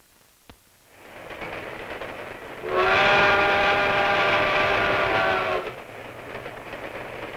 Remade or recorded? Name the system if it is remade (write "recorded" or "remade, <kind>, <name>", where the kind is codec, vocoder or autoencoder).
recorded